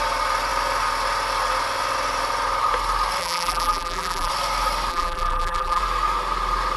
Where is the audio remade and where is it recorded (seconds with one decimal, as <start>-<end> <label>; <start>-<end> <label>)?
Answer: 0.0-3.2 recorded; 3.2-4.3 remade; 4.3-4.9 recorded; 4.9-5.8 remade; 5.8-6.8 recorded